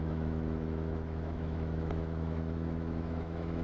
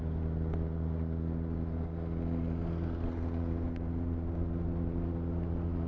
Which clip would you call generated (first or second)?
first